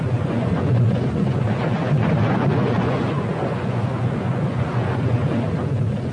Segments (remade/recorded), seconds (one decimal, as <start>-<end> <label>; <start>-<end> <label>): 0.0-5.2 remade; 5.2-6.1 recorded